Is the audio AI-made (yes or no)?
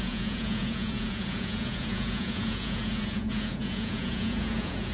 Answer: yes